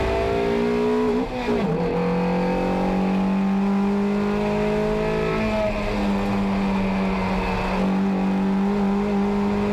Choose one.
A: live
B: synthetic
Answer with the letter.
A